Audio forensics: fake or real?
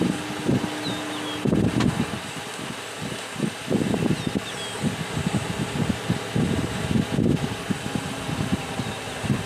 real